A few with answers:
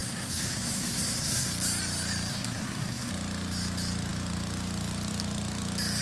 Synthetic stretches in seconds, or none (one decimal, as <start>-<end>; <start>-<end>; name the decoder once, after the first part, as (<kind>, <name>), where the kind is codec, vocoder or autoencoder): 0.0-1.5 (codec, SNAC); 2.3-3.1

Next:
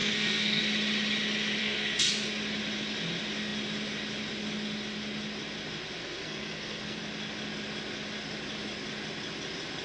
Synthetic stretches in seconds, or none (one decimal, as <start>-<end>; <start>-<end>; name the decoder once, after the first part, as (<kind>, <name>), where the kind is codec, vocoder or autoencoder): 0.0-0.6 (codec, SNAC); 1.6-2.1; 6.0-7.0

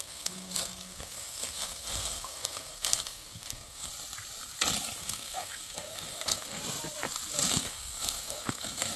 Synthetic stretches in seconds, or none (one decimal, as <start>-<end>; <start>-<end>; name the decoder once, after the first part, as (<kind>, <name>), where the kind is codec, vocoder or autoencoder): 0.0-3.9 (codec, SNAC); 5.0-6.6; 7.5-9.0

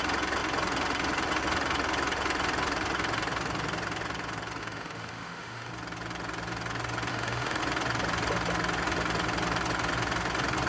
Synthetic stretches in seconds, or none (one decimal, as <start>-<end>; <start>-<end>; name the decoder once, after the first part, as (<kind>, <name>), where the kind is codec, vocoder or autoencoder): 4.6-5.7 (autoencoder, DAC-VAE); 7.1-7.6